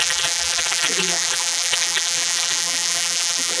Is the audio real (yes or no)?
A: no